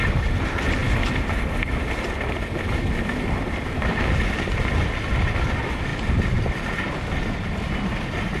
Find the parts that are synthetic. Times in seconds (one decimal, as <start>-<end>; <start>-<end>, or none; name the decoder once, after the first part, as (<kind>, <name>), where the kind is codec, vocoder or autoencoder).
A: none